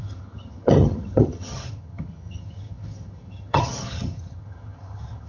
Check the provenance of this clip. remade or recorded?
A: remade